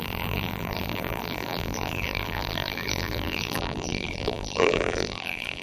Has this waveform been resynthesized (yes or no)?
yes